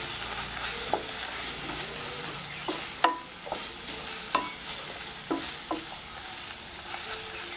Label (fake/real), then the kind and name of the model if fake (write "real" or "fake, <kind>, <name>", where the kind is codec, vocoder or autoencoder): real